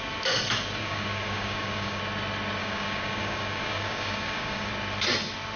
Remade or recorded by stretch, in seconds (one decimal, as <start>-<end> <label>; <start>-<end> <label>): 0.0-0.8 recorded; 0.8-2.0 remade; 2.0-2.6 recorded; 2.6-4.7 remade; 4.7-5.6 recorded